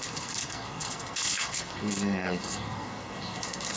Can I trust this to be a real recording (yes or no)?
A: no